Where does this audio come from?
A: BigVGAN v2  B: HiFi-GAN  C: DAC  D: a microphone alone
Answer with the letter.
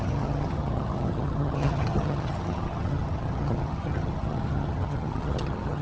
B